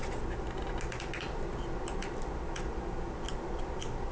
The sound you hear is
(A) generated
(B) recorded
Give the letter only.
B